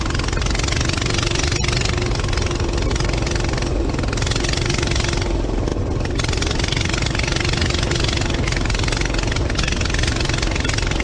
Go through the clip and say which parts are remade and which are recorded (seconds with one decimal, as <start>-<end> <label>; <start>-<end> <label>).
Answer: 0.0-11.0 recorded

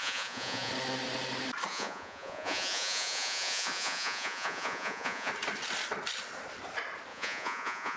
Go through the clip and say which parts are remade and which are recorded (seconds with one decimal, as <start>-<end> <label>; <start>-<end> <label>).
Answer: 0.0-0.7 remade; 0.7-1.7 recorded; 1.7-5.3 remade; 5.3-7.1 recorded; 7.1-8.0 remade

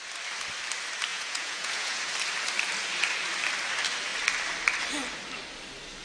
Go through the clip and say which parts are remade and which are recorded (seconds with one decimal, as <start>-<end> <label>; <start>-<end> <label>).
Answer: 0.0-1.1 recorded; 1.1-2.0 remade; 2.0-6.0 recorded

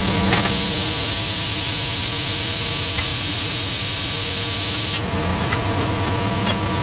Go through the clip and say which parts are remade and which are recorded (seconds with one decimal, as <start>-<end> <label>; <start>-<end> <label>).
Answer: 0.0-3.1 recorded; 3.1-4.1 remade; 4.1-5.3 recorded; 5.3-6.0 remade; 6.0-6.8 recorded